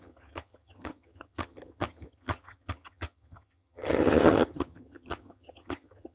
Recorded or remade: remade